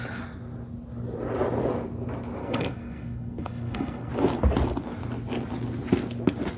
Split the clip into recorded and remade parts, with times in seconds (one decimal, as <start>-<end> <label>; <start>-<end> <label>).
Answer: 0.0-2.4 recorded; 2.4-4.1 remade; 4.1-6.6 recorded

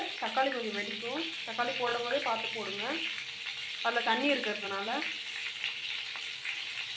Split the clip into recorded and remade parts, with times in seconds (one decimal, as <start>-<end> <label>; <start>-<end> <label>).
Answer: 0.0-4.5 recorded; 4.5-5.0 remade; 5.0-7.0 recorded

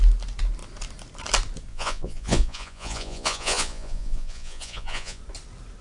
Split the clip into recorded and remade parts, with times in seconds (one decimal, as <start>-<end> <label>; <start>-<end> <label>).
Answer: 0.0-1.7 recorded; 1.7-5.2 remade; 5.2-5.8 recorded

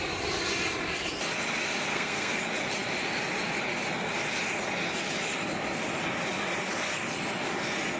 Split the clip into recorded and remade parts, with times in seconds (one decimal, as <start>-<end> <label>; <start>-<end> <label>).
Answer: 0.0-1.9 recorded; 1.9-2.4 remade; 2.4-8.0 recorded

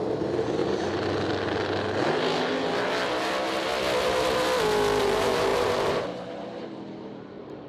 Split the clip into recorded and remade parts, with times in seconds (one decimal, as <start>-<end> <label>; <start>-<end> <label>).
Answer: 0.0-0.6 remade; 0.6-5.0 recorded; 5.0-7.7 remade

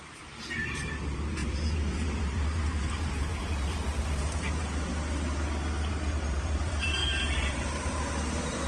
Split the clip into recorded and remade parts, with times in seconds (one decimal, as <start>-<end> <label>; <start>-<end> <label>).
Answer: 0.0-4.9 remade; 4.9-5.9 recorded; 5.9-7.0 remade; 7.0-7.5 recorded; 7.5-8.7 remade

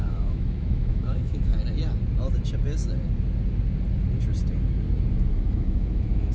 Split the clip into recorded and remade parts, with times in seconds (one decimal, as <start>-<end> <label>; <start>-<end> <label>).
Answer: 0.0-1.5 remade; 1.5-5.3 recorded; 5.3-6.3 remade

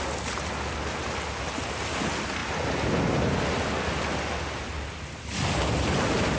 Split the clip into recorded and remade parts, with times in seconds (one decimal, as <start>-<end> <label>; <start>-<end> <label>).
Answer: 0.0-6.4 recorded